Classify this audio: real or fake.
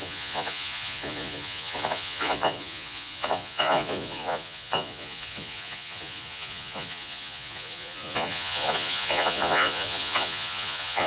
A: fake